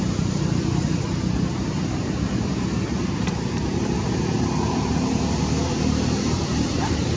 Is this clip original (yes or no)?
no